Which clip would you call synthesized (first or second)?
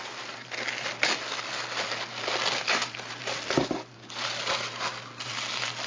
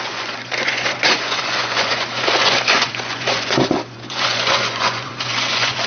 second